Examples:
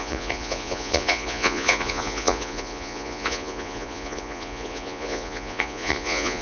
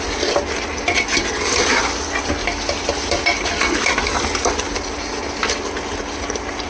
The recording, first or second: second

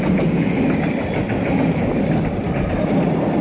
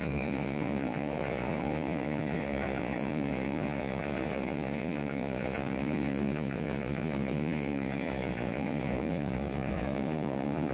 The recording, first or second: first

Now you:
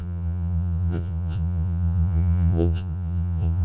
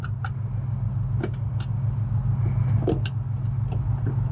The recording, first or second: second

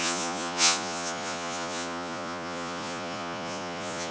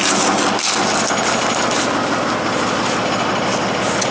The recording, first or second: second